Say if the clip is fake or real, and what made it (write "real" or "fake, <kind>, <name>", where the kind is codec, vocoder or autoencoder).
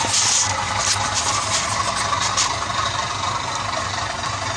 real